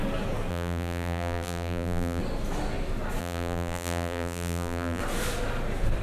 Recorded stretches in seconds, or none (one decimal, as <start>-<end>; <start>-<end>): 0.0-0.5; 2.2-3.2; 5.0-6.0